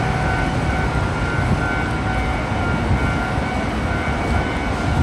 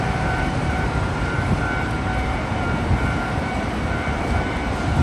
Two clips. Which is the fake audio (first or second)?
second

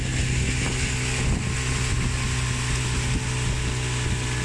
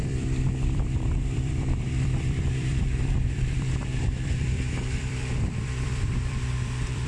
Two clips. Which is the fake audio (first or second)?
second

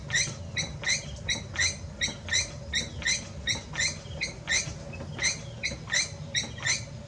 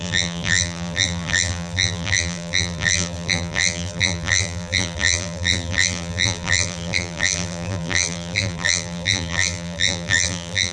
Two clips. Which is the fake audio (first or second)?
second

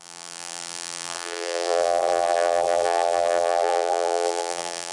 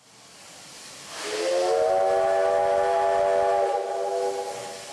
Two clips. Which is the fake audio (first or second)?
first